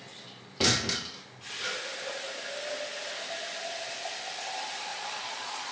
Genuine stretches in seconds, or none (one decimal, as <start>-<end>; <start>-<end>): 0.0-4.9